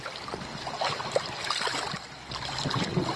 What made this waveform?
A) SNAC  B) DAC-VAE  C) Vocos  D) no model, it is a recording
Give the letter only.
D